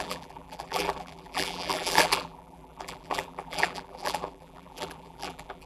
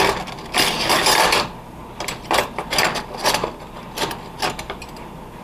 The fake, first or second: first